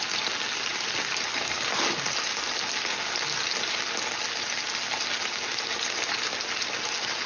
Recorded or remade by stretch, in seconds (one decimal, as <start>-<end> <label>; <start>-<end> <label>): 0.0-0.7 recorded; 0.7-1.7 remade; 1.7-7.3 recorded